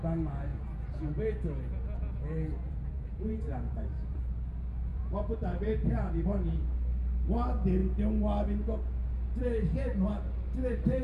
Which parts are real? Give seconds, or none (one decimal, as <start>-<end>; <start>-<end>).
0.0-0.5; 1.1-2.5; 4.2-4.9; 6.6-11.0